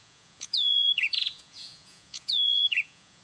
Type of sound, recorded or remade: remade